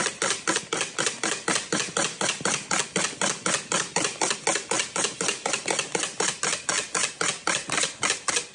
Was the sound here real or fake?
real